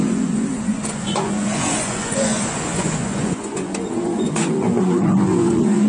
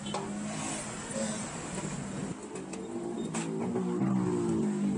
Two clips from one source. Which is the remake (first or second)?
first